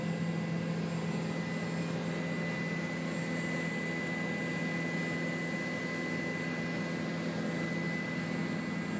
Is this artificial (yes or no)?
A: no